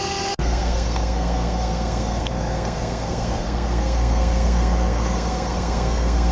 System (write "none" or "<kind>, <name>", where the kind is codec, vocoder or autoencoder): codec, SNAC